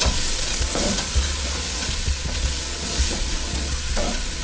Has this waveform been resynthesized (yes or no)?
yes